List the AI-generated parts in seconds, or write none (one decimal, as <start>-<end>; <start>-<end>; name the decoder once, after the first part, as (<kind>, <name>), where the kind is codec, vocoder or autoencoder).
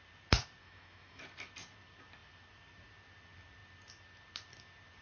0.6-1.2 (autoencoder, DAC-VAE)